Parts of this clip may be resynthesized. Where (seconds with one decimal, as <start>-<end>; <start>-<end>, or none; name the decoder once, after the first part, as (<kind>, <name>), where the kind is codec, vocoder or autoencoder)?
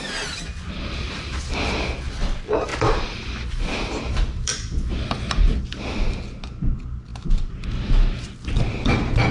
2.7-5.8 (vocoder, BigVGAN v2)